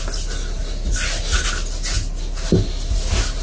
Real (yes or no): yes